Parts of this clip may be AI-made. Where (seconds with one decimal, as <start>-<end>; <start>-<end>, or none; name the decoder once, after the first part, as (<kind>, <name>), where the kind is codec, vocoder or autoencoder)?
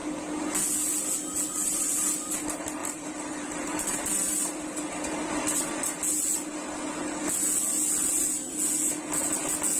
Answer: 1.6-2.1 (vocoder, BigVGAN v2); 2.8-5.3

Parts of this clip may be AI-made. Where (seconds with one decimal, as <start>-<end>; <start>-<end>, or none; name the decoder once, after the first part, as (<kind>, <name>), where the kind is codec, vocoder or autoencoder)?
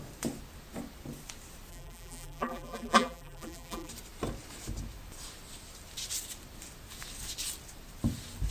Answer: 1.7-3.9 (vocoder, BigVGAN v2)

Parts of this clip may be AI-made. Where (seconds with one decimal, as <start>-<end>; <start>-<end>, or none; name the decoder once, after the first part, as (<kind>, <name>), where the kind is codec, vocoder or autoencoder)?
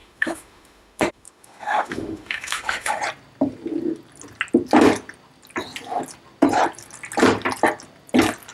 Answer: 0.0-3.0 (autoencoder, DAC-VAE)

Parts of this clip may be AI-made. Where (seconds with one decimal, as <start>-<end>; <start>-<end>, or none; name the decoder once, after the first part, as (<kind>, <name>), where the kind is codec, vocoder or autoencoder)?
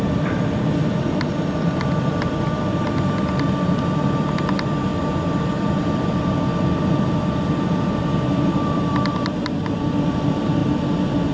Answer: 0.0-11.3 (vocoder, BigVGAN v2)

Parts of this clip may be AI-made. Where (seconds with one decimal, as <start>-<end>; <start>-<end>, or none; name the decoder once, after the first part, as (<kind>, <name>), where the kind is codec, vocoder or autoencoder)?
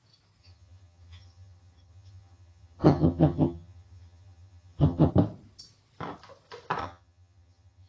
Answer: 0.4-5.1 (vocoder, HiFi-GAN); 6.8-7.9